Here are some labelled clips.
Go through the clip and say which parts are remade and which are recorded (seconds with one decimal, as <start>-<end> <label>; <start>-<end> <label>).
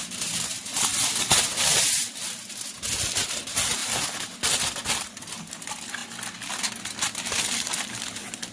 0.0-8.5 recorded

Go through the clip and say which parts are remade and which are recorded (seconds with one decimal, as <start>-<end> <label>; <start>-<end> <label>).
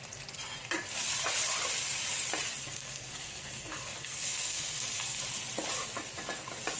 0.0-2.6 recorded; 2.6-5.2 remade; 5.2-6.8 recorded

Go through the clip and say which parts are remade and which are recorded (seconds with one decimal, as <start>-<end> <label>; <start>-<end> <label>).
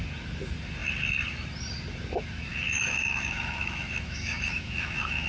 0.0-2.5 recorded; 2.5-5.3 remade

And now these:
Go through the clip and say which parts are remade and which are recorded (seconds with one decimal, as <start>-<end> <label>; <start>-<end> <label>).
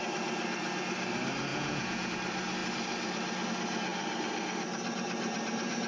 0.0-1.5 recorded; 1.5-2.1 remade; 2.1-5.9 recorded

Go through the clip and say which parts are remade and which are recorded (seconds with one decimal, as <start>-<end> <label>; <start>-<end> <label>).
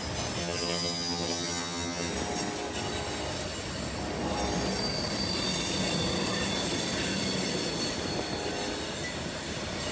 0.0-0.4 recorded; 0.4-2.1 remade; 2.1-9.9 recorded